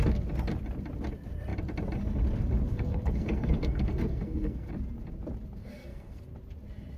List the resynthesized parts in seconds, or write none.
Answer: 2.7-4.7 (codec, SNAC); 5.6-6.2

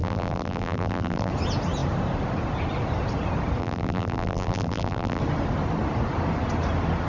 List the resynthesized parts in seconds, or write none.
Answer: 0.0-1.3 (vocoder, BigVGAN v2); 3.6-5.2

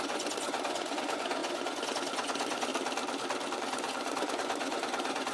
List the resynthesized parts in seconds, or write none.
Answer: 0.0-2.7 (vocoder, Vocos); 3.6-5.3

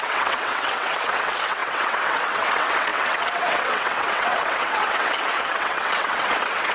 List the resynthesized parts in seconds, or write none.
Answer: 0.0-6.7 (vocoder, WaveNeXt)

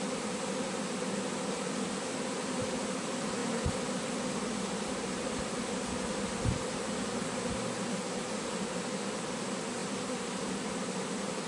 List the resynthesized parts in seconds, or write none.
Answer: 3.4-5.4 (vocoder, BigVGAN v2); 9.8-10.6

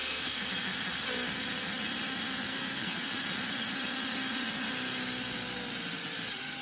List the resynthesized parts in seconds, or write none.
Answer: 0.0-0.5 (codec, SNAC); 2.5-3.1